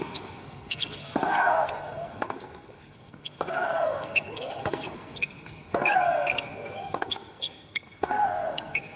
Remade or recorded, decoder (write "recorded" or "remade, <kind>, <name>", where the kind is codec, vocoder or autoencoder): remade, codec, SNAC